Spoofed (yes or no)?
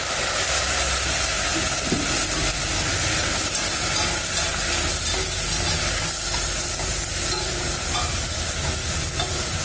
no